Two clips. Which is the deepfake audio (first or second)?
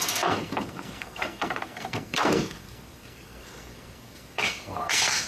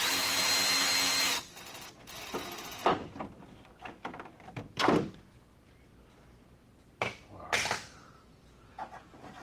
first